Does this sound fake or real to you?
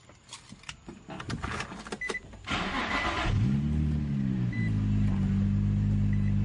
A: real